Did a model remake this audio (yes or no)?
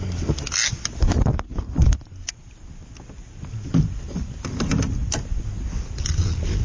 no